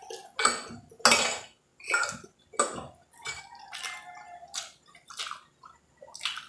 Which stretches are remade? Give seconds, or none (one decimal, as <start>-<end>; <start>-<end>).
none